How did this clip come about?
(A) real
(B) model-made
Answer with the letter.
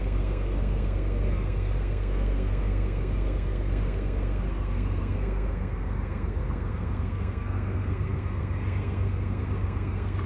B